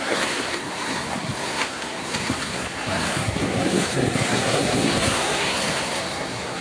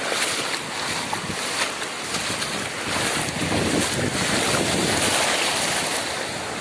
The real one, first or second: second